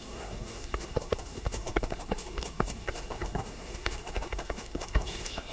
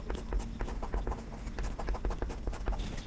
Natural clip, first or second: second